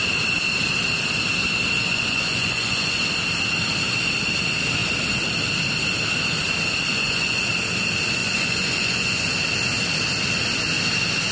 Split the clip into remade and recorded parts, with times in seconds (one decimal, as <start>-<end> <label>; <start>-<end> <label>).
0.0-1.9 recorded; 1.9-3.0 remade; 3.0-6.9 recorded; 6.9-7.5 remade; 7.5-8.2 recorded; 8.2-9.3 remade; 9.3-11.3 recorded